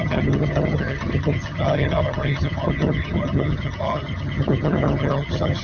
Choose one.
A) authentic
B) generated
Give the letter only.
B